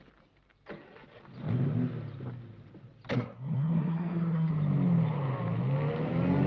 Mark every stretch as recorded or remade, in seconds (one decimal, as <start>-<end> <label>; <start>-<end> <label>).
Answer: 0.0-3.1 recorded; 3.1-4.5 remade; 4.5-6.5 recorded